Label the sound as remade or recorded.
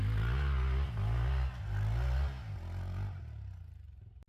recorded